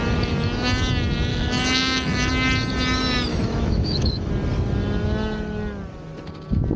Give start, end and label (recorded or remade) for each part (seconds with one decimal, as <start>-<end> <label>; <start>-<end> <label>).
0.0-1.3 recorded; 1.3-2.3 remade; 2.3-3.3 recorded; 3.3-4.3 remade; 4.3-6.8 recorded